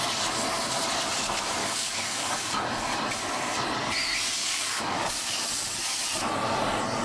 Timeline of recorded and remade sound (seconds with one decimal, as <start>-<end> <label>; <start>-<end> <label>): 0.0-1.6 recorded; 1.6-2.6 remade; 2.6-4.4 recorded; 4.4-5.5 remade; 5.5-7.0 recorded